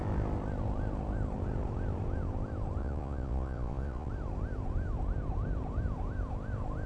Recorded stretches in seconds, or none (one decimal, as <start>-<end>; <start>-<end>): 0.0-2.8; 4.1-6.9

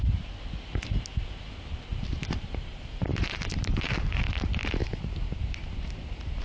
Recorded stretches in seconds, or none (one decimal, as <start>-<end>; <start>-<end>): 0.0-1.9; 4.2-4.8; 5.4-6.4

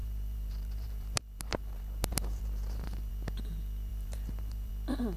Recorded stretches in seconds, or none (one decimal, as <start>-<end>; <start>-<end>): 3.1-3.9; 4.7-5.2

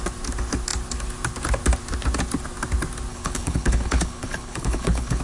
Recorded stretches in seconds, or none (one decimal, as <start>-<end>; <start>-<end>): 0.0-3.1

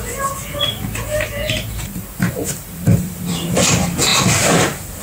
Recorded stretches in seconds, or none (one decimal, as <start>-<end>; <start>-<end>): 0.0-2.4; 3.6-5.0